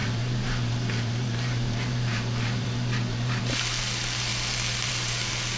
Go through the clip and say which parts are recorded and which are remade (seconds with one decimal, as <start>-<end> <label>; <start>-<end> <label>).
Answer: 0.0-3.4 remade; 3.4-5.6 recorded